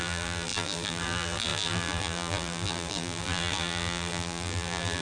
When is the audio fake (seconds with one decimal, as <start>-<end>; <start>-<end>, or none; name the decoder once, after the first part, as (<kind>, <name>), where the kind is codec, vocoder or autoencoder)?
0.0-5.0 (vocoder, BigVGAN v2)